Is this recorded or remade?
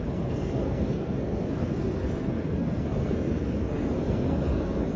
remade